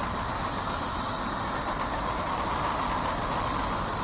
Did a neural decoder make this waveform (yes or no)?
no